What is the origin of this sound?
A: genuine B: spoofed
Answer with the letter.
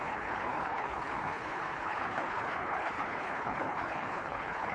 B